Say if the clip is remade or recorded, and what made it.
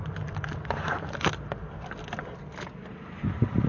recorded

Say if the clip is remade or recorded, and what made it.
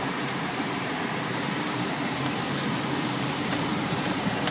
remade, vocoder, BigVGAN v2